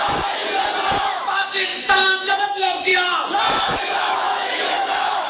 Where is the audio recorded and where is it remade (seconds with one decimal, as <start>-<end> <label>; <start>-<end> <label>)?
0.0-0.4 remade; 0.4-1.0 recorded; 1.0-2.9 remade; 2.9-3.5 recorded; 3.5-5.3 remade